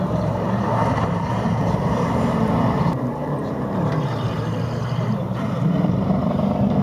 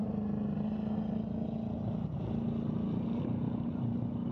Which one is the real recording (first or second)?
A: second